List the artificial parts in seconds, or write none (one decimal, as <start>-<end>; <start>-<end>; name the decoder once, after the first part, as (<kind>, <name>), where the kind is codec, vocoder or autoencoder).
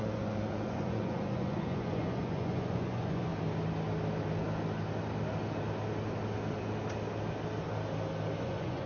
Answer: 0.0-3.3 (vocoder, Vocos); 8.4-8.9